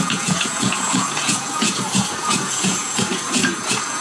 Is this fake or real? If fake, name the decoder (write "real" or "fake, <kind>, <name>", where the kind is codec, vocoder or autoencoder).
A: fake, vocoder, Vocos